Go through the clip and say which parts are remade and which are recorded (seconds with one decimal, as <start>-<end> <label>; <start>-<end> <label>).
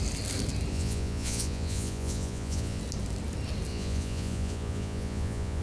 0.0-0.7 recorded; 0.7-2.8 remade; 2.8-3.7 recorded; 3.7-5.6 remade